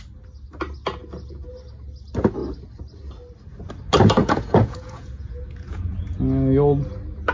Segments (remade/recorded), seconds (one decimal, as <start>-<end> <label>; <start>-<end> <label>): 0.0-4.2 recorded; 4.2-6.2 remade; 6.2-7.3 recorded